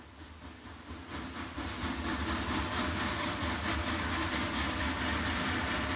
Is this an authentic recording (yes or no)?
yes